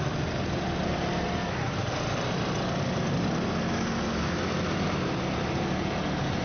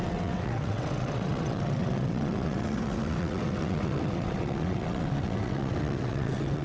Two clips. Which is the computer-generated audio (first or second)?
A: second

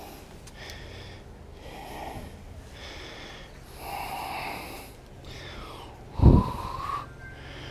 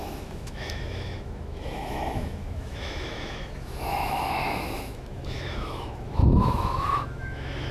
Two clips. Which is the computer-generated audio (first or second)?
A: second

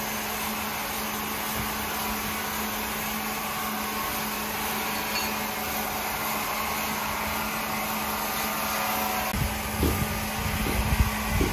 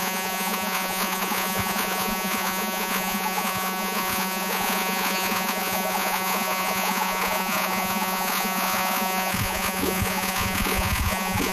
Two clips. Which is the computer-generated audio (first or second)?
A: second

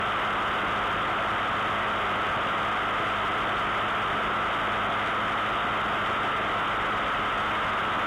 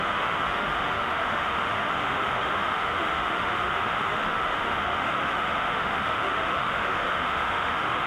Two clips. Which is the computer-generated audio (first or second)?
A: second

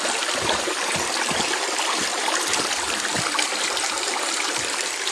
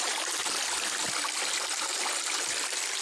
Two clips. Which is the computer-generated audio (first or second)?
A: first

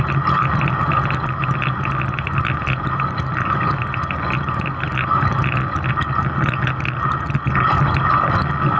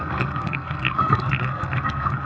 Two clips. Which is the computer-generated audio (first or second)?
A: second